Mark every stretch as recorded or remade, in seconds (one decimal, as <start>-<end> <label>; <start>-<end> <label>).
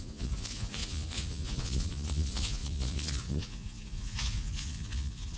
0.0-5.4 remade